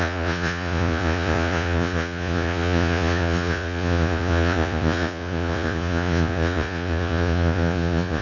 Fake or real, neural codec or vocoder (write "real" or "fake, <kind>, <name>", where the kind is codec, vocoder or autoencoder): fake, vocoder, Vocos